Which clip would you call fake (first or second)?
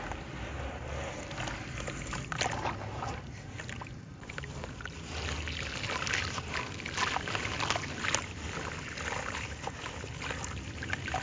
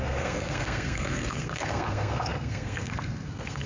second